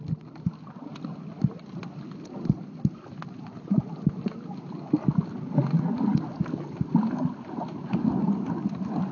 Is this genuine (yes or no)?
yes